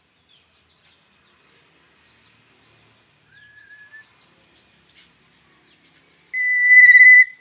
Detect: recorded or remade recorded